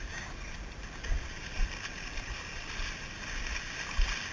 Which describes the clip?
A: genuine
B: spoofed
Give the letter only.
A